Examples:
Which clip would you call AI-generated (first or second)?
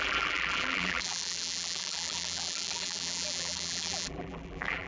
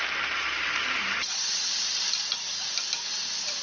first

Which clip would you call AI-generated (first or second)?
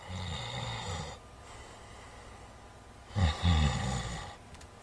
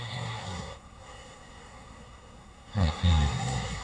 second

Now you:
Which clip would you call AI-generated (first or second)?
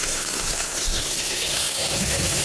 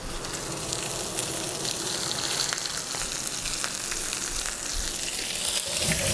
first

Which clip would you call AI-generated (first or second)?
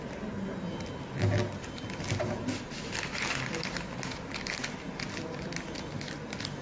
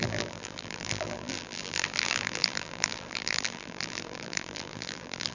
second